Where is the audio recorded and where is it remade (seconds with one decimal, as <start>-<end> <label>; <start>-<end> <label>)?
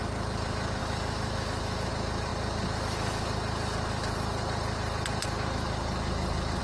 0.0-0.8 recorded; 0.8-1.9 remade; 1.9-6.6 recorded